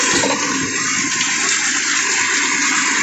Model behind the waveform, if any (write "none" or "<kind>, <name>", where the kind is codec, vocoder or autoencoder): none